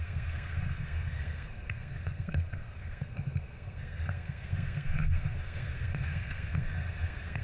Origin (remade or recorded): remade